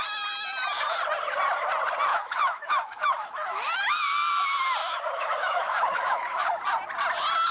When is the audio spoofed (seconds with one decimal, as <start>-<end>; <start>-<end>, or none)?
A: 2.1-3.9; 4.8-6.6